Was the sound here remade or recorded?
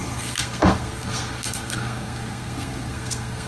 remade